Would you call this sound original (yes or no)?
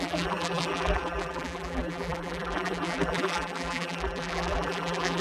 no